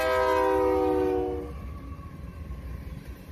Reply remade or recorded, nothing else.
recorded